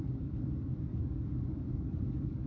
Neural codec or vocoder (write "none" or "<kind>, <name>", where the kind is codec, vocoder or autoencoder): codec, DAC